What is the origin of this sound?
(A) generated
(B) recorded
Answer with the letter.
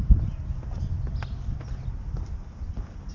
B